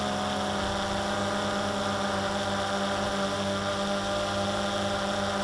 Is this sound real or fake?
real